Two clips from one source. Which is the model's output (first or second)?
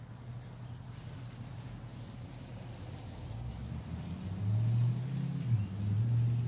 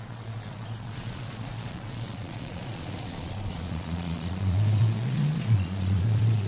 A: second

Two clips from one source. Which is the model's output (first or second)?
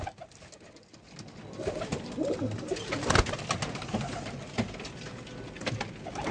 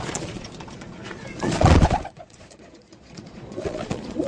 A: second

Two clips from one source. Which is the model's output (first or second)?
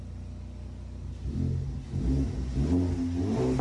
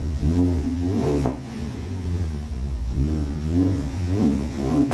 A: second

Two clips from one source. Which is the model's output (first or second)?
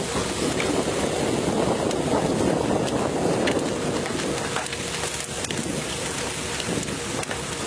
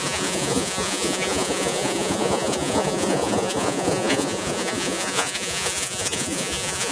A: second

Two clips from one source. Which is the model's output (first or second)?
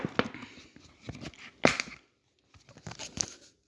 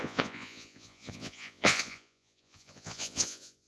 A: second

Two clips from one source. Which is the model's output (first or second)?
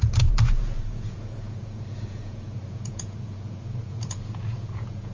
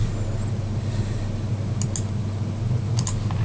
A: first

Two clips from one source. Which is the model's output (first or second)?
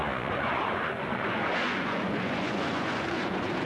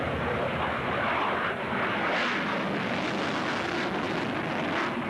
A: first